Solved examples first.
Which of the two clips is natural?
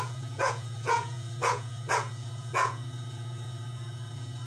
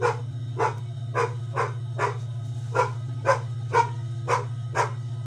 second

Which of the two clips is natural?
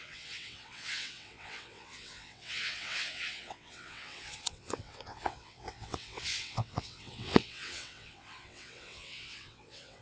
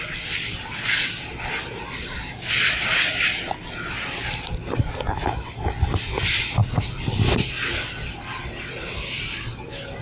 second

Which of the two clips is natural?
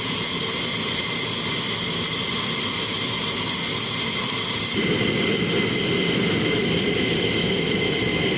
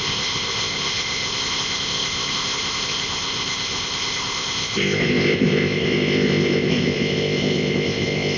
first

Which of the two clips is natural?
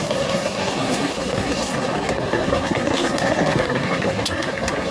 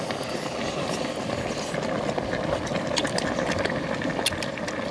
second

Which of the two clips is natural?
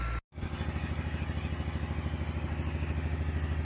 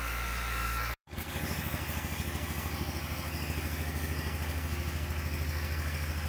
first